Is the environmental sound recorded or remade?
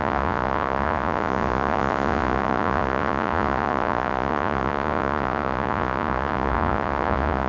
remade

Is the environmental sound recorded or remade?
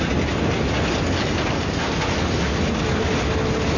recorded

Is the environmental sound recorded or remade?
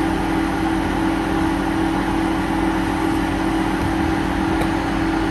recorded